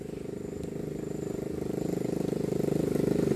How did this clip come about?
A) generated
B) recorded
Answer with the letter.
B